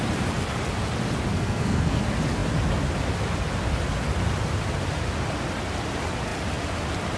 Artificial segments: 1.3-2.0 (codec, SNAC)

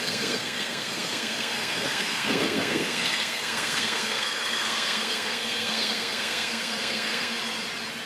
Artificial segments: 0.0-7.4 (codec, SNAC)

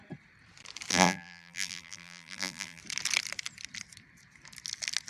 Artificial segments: 0.9-2.8 (vocoder, BigVGAN v2)

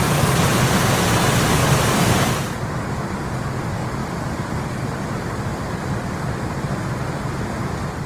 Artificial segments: 1.6-2.3 (vocoder, BigVGAN v2); 4.0-4.6

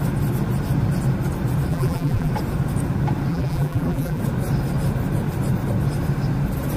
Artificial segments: 1.7-2.3 (vocoder, BigVGAN v2); 3.3-4.2

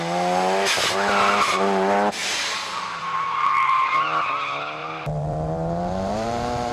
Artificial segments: 2.2-3.5 (vocoder, BigVGAN v2); 4.8-6.7

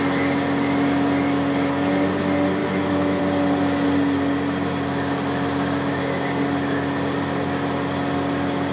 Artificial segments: 2.6-3.2 (autoencoder, DAC-VAE)

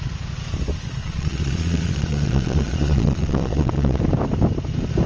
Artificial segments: 1.0-4.0 (vocoder, Vocos)